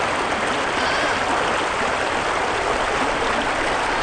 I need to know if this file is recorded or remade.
recorded